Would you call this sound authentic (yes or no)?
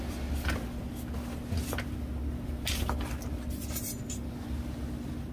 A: yes